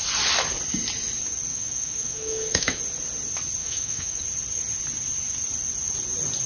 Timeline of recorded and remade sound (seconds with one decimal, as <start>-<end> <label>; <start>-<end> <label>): 0.0-1.5 recorded; 1.5-2.8 remade; 2.8-3.6 recorded; 3.6-4.2 remade; 4.2-6.5 recorded